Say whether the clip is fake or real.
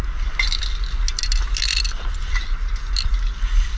real